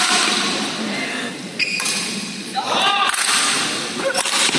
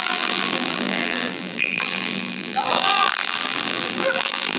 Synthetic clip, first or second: second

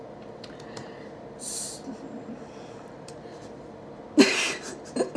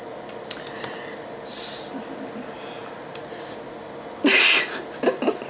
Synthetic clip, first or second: first